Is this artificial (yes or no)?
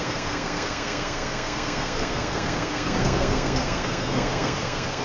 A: yes